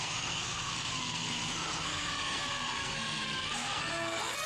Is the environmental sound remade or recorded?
remade